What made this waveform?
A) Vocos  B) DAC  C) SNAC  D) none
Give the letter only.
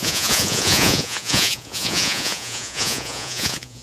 A